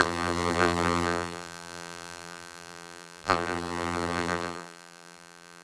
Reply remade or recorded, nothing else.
remade